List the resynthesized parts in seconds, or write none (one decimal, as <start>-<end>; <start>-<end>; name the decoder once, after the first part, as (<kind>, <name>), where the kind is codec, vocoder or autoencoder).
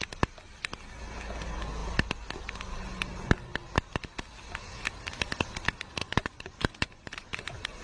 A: 6.0-7.8 (vocoder, Vocos)